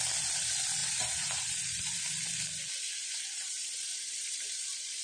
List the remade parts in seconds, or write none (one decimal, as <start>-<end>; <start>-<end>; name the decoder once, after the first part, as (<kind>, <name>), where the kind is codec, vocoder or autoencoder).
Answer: 0.8-2.0 (vocoder, BigVGAN v2); 3.0-5.0